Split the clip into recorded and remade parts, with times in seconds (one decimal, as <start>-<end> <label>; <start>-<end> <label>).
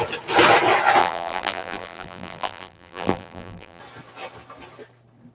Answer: 0.0-1.0 recorded; 1.0-3.8 remade; 3.8-5.3 recorded